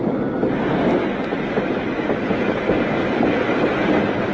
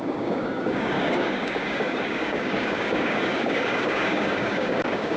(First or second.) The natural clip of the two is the first